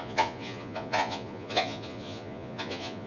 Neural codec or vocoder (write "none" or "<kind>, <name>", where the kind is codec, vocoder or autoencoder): vocoder, Vocos